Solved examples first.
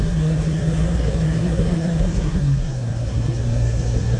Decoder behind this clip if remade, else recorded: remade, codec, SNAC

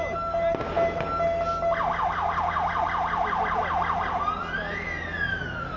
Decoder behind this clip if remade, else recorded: recorded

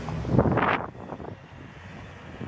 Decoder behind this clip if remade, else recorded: recorded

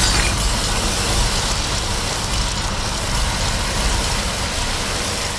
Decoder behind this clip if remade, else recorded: recorded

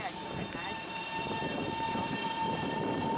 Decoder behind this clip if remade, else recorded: remade, vocoder, BigVGAN v2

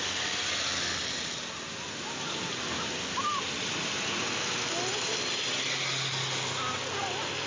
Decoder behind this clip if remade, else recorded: recorded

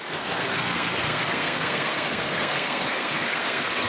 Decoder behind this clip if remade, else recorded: remade, codec, SNAC